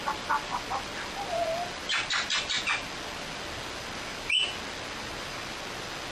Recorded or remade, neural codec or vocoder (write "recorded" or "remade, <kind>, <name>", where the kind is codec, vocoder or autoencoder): recorded